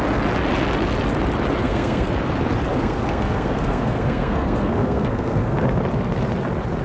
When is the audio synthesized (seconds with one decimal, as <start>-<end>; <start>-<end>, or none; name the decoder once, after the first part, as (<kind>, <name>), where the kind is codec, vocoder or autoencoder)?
1.6-2.1 (codec, SNAC); 2.7-5.8